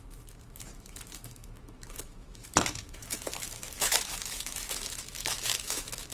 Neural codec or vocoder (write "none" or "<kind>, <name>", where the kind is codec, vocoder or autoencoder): autoencoder, DAC-VAE